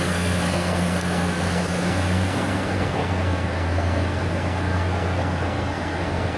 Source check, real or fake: fake